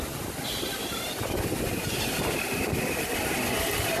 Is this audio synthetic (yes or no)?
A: no